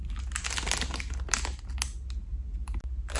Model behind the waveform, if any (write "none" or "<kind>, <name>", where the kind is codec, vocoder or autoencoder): none